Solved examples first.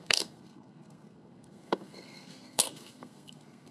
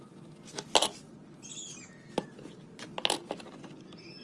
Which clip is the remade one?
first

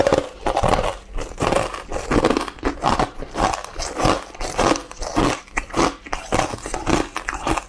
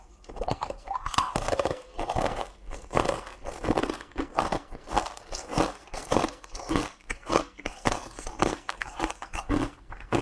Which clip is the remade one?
second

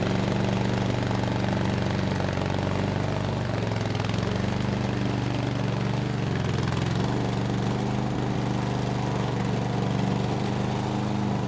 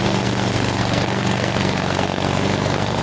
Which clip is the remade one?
second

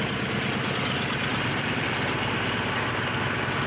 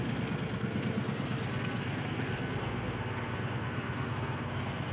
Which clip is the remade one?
second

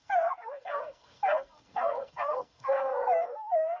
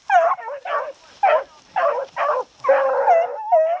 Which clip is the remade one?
first